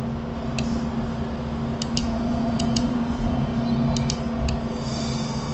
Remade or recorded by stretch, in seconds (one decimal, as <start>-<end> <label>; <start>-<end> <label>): 0.0-2.0 recorded; 2.0-3.6 remade; 3.6-5.5 recorded